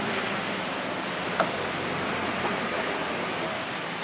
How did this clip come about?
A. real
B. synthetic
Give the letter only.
A